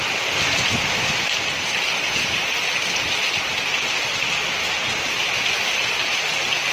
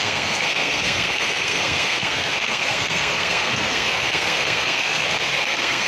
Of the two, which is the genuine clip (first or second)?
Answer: first